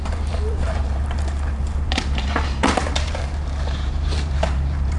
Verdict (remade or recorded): remade